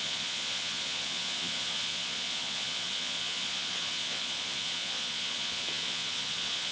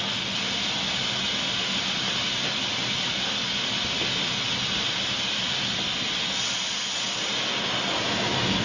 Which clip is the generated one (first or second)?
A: first